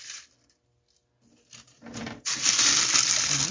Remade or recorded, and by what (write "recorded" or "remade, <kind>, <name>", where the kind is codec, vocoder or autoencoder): recorded